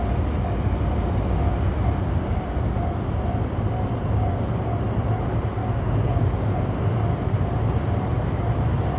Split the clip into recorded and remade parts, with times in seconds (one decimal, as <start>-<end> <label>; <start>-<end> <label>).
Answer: 0.0-5.6 recorded; 5.6-6.6 remade; 6.6-9.0 recorded